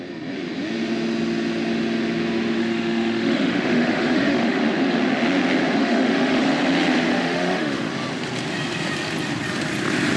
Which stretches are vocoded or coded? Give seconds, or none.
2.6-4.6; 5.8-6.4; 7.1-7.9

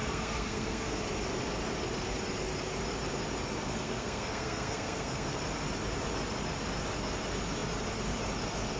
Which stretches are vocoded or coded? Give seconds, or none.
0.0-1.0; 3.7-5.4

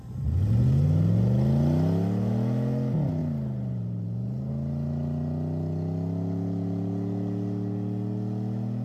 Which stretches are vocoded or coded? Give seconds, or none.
3.2-4.5

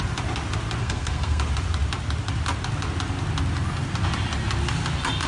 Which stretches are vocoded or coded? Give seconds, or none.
0.8-1.4

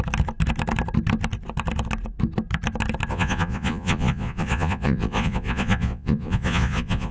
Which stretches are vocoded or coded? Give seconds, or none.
3.1-7.1